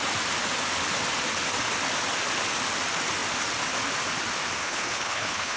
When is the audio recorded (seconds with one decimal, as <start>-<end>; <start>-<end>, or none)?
0.0-4.6